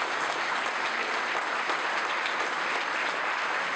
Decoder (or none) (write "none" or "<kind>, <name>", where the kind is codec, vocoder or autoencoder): none